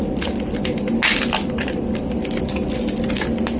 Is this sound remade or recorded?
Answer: recorded